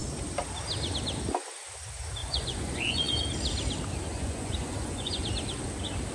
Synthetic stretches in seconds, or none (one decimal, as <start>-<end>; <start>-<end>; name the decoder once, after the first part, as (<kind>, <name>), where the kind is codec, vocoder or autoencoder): 2.2-3.2 (vocoder, Vocos); 4.1-5.2